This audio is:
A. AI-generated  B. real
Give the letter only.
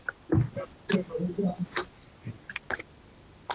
B